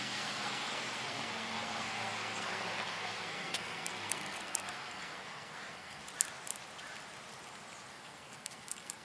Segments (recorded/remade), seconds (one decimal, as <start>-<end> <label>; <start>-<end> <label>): 0.0-6.0 remade; 6.0-7.9 recorded; 7.9-9.0 remade